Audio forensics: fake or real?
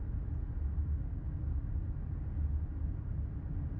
real